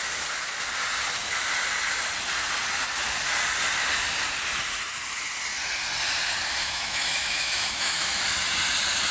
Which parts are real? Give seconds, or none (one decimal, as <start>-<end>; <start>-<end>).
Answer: 0.0-6.6; 8.2-9.1